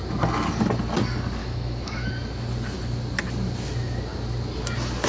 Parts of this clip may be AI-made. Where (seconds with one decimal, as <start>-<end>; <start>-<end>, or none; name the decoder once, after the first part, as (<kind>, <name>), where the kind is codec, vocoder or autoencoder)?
1.4-2.1 (autoencoder, DAC-VAE)